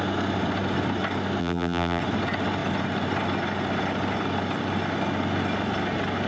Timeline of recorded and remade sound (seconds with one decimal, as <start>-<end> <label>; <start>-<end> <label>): 0.0-1.4 recorded; 1.4-2.0 remade; 2.0-6.3 recorded